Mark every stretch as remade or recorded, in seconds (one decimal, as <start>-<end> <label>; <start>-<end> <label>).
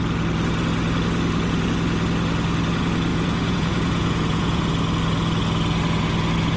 0.0-3.1 recorded; 3.1-4.7 remade; 4.7-6.6 recorded